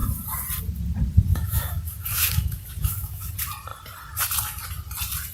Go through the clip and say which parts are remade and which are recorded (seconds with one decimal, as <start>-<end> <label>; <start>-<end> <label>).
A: 0.0-1.3 recorded; 1.3-3.3 remade; 3.3-5.3 recorded